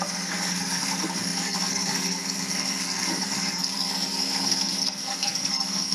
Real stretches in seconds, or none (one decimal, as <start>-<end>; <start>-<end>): none